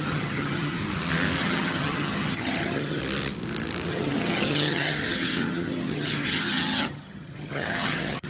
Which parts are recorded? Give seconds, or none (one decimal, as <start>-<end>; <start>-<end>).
0.8-1.4; 3.0-3.9